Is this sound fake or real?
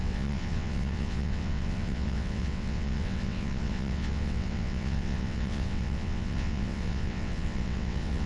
fake